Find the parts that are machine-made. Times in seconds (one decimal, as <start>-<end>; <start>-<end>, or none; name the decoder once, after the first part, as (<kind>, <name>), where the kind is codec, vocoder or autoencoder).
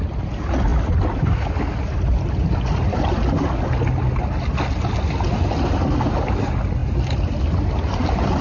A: none